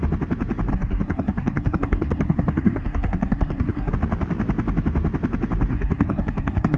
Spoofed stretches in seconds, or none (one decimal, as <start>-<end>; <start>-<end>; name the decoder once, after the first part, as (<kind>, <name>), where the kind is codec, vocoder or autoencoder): 0.7-3.9 (codec, SNAC); 5.7-6.8